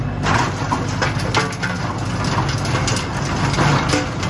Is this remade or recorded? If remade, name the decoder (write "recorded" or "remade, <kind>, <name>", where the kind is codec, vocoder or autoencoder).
recorded